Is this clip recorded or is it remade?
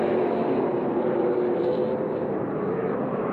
remade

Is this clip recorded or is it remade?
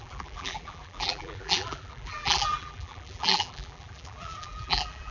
remade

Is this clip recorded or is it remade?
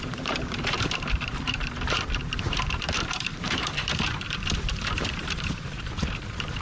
remade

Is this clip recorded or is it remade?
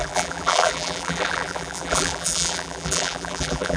remade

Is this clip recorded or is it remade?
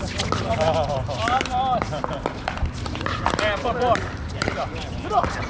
remade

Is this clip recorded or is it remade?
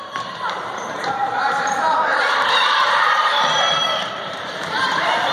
remade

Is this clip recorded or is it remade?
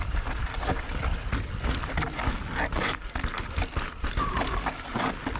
remade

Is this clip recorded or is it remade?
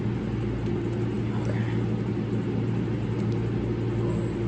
recorded